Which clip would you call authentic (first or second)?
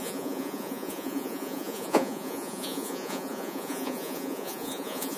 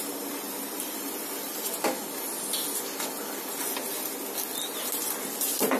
second